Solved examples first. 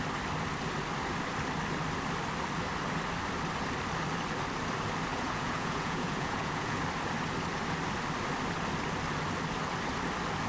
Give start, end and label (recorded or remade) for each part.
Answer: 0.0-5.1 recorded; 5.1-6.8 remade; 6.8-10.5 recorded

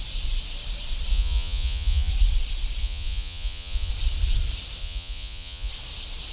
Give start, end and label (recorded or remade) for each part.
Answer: 0.0-1.1 recorded; 1.1-2.1 remade; 2.1-2.8 recorded; 2.8-3.9 remade; 3.9-4.8 recorded; 4.8-5.7 remade; 5.7-6.3 recorded

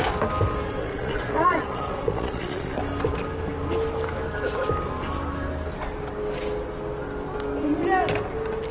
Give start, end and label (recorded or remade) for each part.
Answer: 0.0-0.8 recorded; 0.8-2.8 remade; 2.8-8.7 recorded

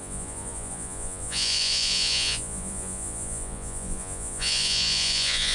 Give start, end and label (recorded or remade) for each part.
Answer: 0.0-5.5 remade

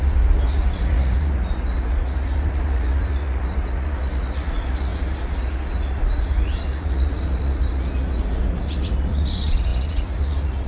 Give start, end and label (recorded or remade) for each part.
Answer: 0.0-10.7 remade

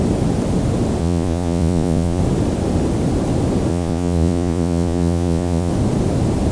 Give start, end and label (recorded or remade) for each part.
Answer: 0.0-1.0 recorded; 1.0-2.2 remade; 2.2-3.7 recorded; 3.7-5.7 remade; 5.7-6.5 recorded